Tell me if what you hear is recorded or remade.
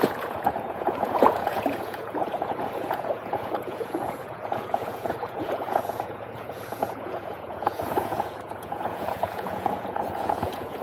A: remade